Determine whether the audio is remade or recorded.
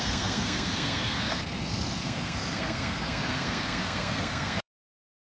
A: remade